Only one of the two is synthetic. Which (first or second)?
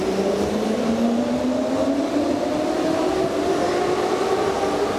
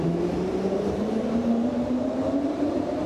second